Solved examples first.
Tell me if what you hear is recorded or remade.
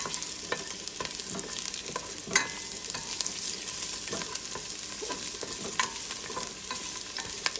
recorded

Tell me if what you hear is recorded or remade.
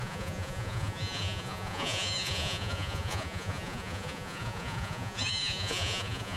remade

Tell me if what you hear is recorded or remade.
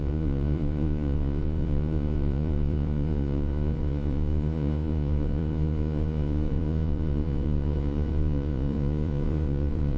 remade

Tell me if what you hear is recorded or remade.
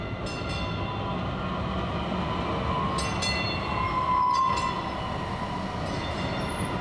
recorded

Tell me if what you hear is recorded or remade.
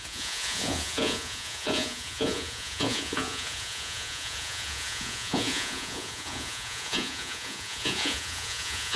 remade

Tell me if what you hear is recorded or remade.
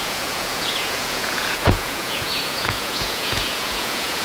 remade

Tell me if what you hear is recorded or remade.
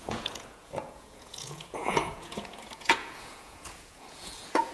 remade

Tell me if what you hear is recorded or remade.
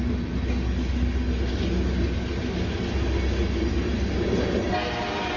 recorded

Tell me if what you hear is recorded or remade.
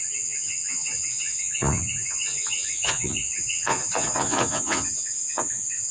remade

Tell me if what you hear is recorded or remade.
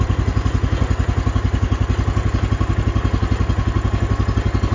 recorded